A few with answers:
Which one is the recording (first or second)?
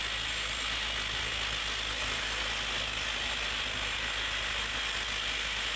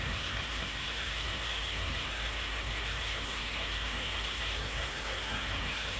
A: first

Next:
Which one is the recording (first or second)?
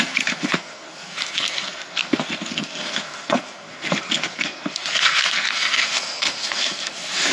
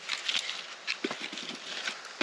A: second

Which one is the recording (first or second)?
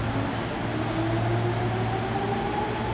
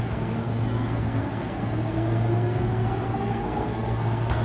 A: first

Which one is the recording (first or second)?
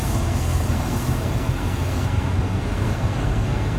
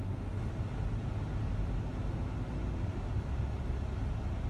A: second